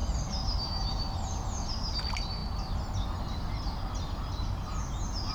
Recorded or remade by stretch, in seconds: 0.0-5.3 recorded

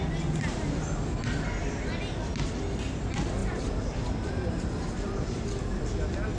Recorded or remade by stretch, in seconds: 0.0-3.4 recorded; 3.4-4.3 remade; 4.3-6.4 recorded

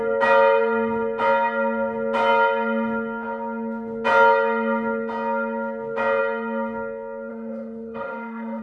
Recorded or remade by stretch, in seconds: 0.0-7.3 recorded; 7.3-8.6 remade

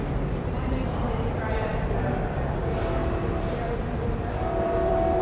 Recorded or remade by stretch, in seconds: 0.0-3.0 recorded; 3.0-5.2 remade

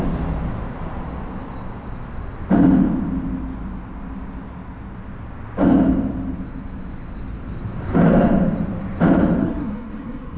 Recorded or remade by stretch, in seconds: 0.0-9.4 recorded; 9.4-10.4 remade

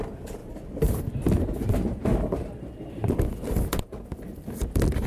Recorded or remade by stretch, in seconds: 0.0-5.1 recorded

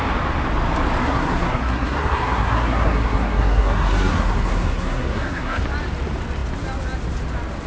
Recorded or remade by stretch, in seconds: 0.0-1.0 recorded; 1.0-5.6 remade; 5.6-7.7 recorded

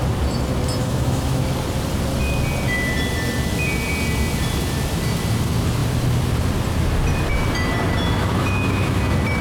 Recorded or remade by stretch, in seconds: 0.0-0.8 recorded; 0.8-1.4 remade; 1.4-8.2 recorded; 8.2-9.0 remade; 9.0-9.4 recorded